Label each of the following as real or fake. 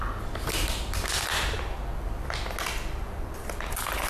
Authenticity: real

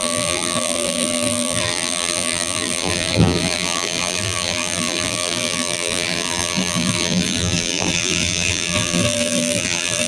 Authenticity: fake